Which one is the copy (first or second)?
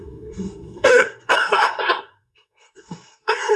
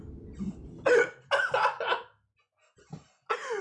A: first